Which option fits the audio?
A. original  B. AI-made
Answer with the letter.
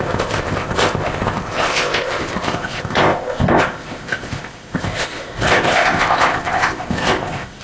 B